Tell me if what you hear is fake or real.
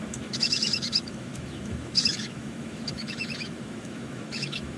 fake